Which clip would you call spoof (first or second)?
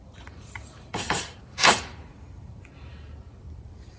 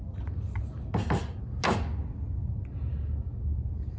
first